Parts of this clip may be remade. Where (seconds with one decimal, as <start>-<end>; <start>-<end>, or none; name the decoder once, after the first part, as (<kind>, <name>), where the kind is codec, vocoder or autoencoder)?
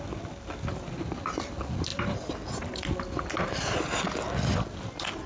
none